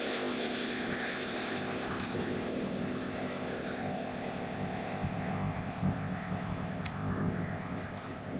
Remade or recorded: remade